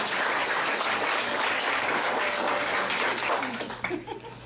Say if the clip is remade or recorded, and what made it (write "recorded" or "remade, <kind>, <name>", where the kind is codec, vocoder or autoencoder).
remade, codec, DAC